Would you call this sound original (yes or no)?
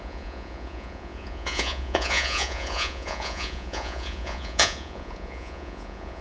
no